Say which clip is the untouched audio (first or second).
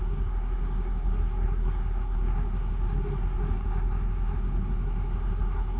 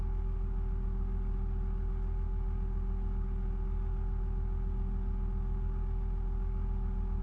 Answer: second